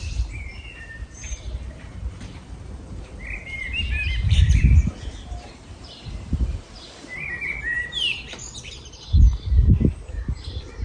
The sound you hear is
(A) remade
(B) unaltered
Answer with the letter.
A